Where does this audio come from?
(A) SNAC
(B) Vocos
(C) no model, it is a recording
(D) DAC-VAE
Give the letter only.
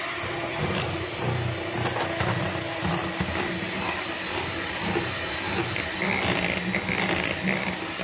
C